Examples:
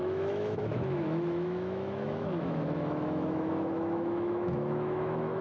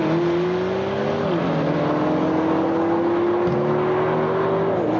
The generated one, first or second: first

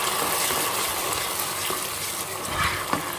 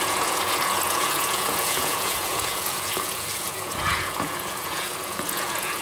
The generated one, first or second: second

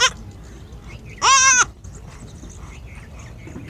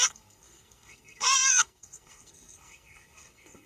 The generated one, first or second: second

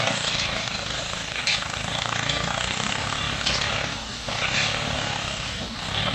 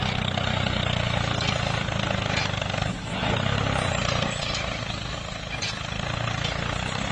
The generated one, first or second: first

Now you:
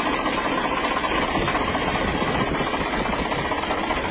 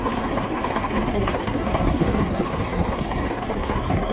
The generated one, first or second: second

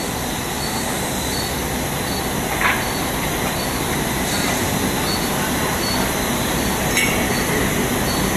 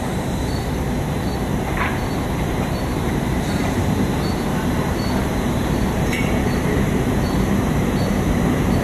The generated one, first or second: second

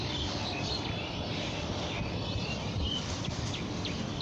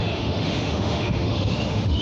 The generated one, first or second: second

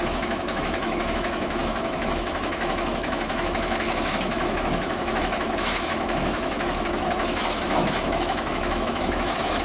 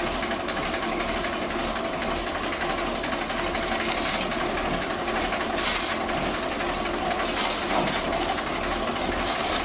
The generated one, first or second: first